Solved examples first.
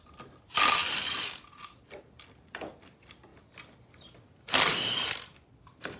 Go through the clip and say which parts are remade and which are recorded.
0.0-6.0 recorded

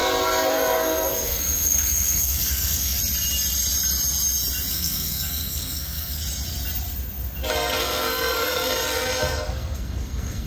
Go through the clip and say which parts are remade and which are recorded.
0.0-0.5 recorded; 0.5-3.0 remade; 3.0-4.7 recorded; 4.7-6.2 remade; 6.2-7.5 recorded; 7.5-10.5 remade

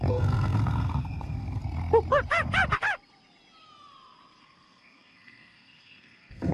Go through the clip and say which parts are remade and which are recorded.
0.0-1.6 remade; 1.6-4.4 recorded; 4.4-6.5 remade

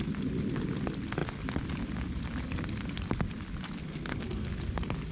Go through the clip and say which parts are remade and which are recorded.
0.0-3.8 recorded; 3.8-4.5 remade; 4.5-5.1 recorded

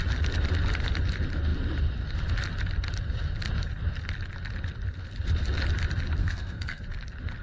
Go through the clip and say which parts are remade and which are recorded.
0.0-6.2 recorded; 6.2-6.8 remade; 6.8-7.4 recorded